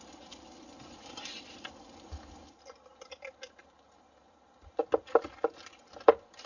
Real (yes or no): yes